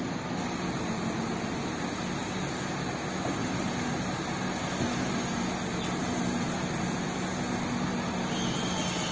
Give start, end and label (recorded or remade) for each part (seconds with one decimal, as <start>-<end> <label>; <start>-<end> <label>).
0.0-9.1 recorded